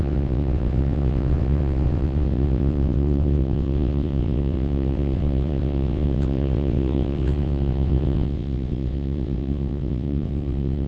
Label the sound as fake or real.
fake